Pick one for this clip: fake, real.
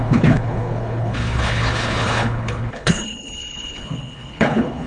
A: fake